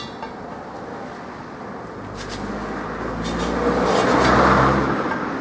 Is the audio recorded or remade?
recorded